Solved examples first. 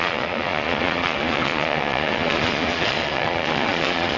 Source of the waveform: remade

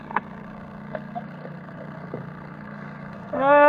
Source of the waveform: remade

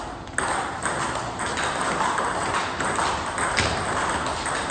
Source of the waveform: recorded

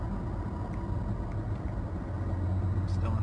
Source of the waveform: recorded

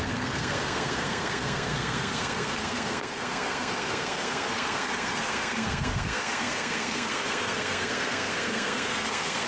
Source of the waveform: remade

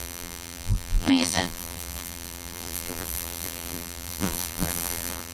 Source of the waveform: remade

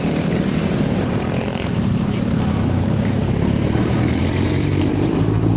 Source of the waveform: remade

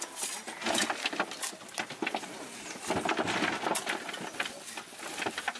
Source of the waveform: recorded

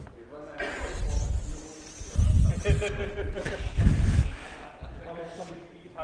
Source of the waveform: recorded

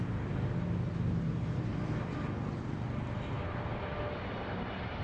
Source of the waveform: recorded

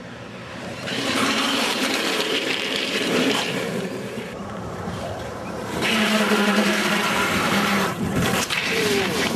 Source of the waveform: remade